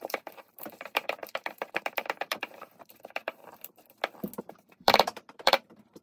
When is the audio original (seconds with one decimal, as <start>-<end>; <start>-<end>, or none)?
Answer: 3.4-4.4